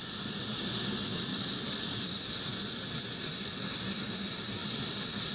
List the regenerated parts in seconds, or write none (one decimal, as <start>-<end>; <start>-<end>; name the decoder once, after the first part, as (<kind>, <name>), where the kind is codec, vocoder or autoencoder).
1.3-2.4 (vocoder, BigVGAN v2); 3.5-4.0; 4.6-5.3